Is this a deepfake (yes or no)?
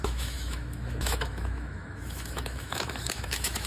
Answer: yes